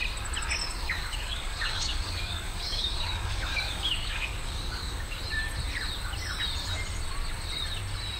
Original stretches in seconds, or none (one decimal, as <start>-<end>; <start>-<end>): 0.0-0.6; 5.2-8.2